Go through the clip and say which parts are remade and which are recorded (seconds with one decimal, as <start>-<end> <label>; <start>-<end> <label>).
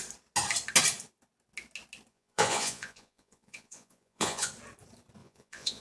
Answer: 0.0-2.1 recorded; 2.1-4.5 remade; 4.5-5.2 recorded; 5.2-5.8 remade